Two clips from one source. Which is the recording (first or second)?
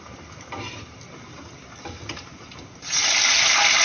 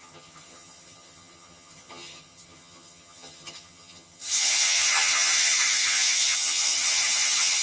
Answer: first